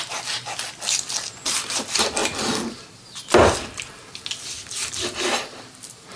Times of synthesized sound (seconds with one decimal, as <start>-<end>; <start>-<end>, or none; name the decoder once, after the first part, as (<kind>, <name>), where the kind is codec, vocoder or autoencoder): none